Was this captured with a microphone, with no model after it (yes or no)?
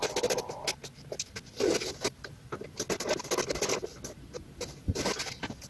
yes